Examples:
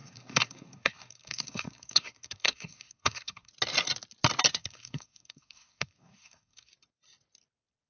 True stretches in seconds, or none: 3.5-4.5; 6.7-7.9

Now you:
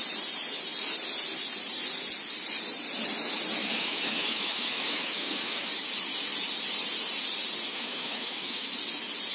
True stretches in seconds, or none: 0.0-3.6; 5.7-7.7; 8.7-9.3

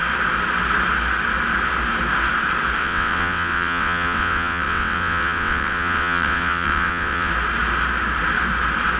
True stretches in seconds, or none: 0.0-2.8; 7.3-9.0